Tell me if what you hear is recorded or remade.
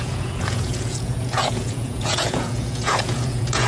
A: remade